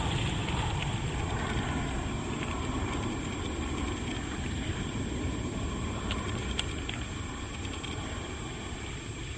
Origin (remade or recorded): recorded